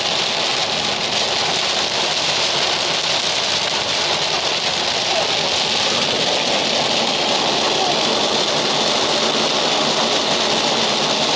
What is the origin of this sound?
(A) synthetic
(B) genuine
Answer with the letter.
B